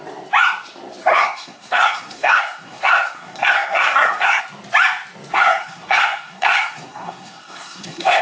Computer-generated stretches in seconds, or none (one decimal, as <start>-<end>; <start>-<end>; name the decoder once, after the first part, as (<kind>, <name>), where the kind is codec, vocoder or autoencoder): 1.1-4.4 (codec, SNAC); 5.3-8.2